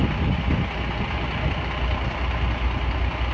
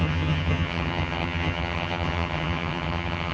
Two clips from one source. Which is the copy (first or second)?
second